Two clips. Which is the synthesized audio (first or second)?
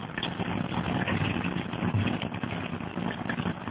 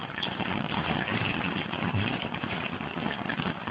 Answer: second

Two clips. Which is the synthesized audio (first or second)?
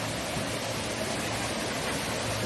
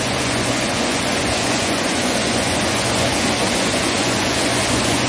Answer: second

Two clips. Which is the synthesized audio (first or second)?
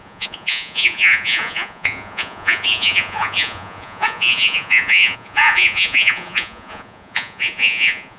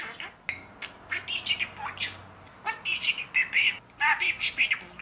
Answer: first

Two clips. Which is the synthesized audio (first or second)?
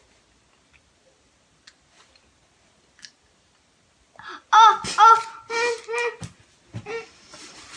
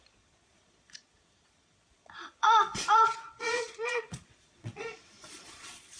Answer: second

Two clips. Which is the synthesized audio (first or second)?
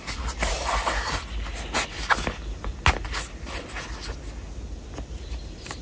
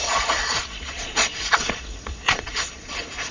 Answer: second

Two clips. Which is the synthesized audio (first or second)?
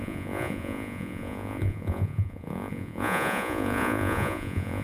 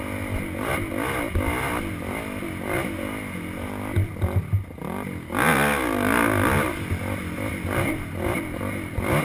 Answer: first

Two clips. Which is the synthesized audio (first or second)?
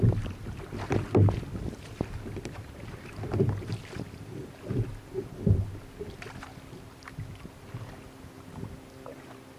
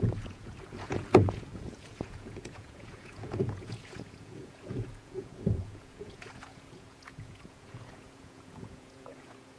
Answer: second